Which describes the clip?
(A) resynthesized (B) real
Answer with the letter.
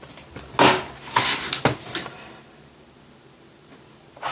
B